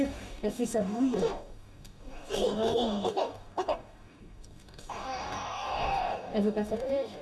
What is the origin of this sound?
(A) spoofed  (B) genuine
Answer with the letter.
A